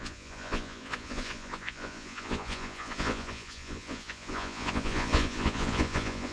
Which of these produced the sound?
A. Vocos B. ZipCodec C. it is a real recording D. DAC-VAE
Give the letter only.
A